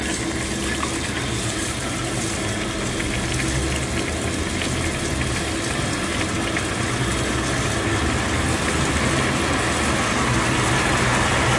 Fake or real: real